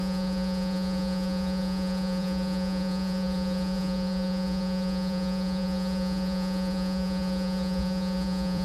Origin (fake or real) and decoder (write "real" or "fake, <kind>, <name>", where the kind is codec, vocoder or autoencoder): fake, vocoder, Vocos